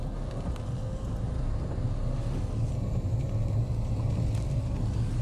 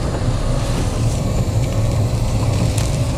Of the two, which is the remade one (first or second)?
second